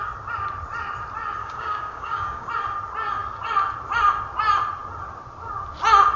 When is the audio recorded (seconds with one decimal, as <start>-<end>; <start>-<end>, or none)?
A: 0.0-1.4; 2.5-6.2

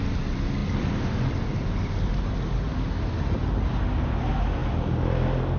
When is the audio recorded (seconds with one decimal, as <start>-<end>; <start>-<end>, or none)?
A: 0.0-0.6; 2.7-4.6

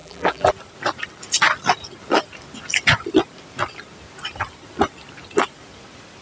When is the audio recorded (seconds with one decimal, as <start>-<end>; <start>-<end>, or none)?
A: 0.5-6.2